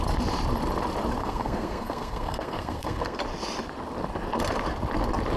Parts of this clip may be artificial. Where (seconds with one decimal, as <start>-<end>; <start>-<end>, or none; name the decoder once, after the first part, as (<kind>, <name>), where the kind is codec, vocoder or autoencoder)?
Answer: 1.2-3.2 (codec, SNAC)